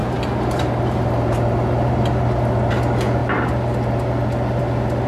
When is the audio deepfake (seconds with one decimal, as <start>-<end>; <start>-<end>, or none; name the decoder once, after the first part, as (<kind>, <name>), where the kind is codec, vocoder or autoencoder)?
0.0-2.7 (vocoder, BigVGAN v2)